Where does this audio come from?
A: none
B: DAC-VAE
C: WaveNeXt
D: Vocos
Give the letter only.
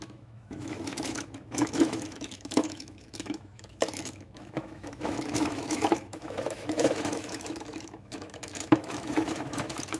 B